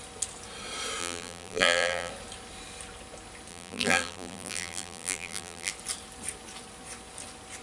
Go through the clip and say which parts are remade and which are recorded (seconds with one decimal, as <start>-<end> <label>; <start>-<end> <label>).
0.0-1.0 recorded; 1.0-2.1 remade; 2.1-3.5 recorded; 3.5-5.7 remade; 5.7-7.6 recorded